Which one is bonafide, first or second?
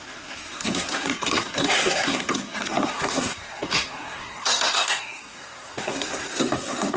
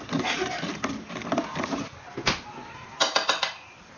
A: second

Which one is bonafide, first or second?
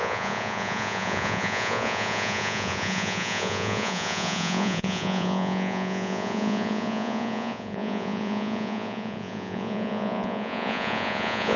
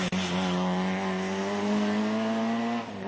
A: second